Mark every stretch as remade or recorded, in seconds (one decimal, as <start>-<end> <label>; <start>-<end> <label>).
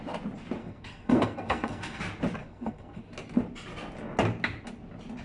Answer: 0.0-0.6 recorded; 0.6-2.0 remade; 2.0-2.4 recorded; 2.4-3.0 remade; 3.0-5.2 recorded